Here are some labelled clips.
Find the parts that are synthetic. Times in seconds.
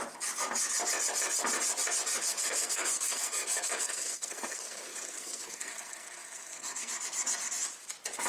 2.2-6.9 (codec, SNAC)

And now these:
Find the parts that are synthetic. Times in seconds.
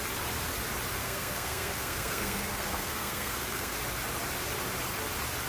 1.0-3.8 (codec, SNAC)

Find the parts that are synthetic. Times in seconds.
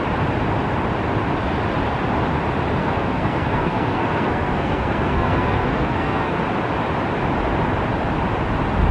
2.8-6.4 (codec, SNAC)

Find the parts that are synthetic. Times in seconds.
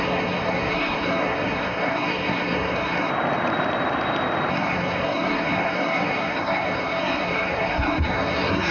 0.0-3.1 (codec, SNAC); 4.5-8.7